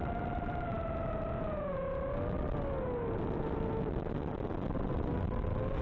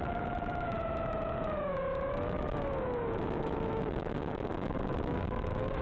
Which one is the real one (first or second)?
first